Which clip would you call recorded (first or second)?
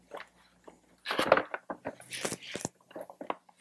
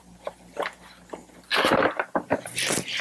first